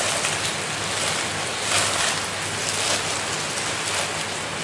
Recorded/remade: recorded